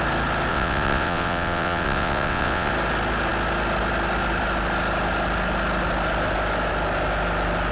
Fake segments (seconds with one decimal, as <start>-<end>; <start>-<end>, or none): 0.5-2.7